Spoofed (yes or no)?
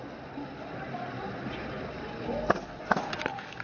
no